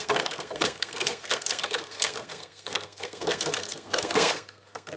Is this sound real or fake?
fake